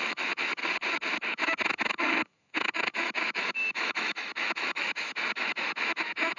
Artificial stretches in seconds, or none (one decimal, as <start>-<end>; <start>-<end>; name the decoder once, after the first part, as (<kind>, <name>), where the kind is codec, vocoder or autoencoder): 0.0-0.6 (autoencoder, DAC-VAE); 1.3-6.4